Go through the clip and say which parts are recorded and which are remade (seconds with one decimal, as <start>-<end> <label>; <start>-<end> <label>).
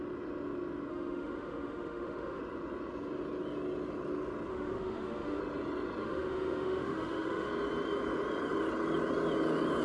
0.0-0.9 recorded; 0.9-2.4 remade; 2.4-4.5 recorded; 4.5-5.4 remade; 5.4-6.0 recorded; 6.0-7.5 remade; 7.5-9.8 recorded